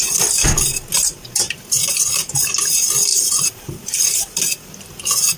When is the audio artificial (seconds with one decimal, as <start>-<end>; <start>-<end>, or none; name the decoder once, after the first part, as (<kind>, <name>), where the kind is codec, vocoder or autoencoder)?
none